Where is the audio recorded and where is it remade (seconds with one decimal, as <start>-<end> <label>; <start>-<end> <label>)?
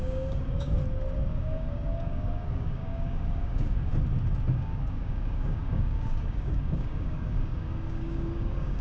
0.0-0.8 remade; 0.8-1.3 recorded; 1.3-3.9 remade; 3.9-4.5 recorded; 4.5-8.8 remade